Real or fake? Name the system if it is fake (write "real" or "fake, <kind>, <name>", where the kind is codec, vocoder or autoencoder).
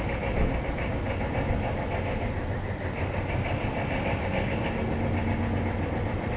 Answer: real